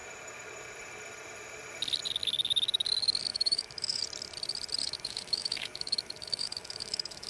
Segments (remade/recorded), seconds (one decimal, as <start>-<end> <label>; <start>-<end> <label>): 0.0-3.3 recorded; 3.3-4.0 remade; 4.0-4.8 recorded; 4.8-7.3 remade

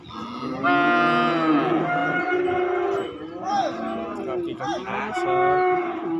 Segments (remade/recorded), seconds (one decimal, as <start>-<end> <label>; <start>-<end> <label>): 0.0-6.2 recorded

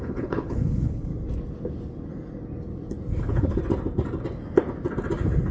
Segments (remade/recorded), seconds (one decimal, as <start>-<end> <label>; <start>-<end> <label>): 0.0-1.1 remade; 1.1-3.2 recorded; 3.2-3.6 remade; 3.6-5.5 recorded

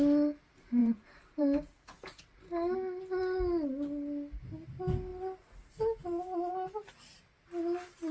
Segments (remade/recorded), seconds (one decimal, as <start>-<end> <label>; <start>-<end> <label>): 0.0-0.8 recorded; 0.8-2.2 remade; 2.2-8.1 recorded

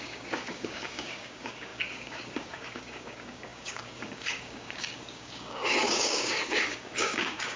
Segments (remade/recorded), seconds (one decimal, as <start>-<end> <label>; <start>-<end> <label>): 0.0-7.6 remade